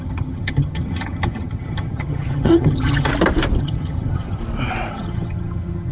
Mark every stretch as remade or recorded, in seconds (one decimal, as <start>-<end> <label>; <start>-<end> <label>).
0.0-3.1 remade; 3.1-3.6 recorded; 3.6-4.4 remade; 4.4-4.9 recorded; 4.9-5.9 remade